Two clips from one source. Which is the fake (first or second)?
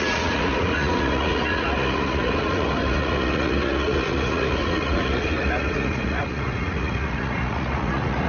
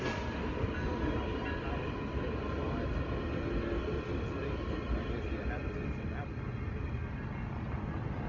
first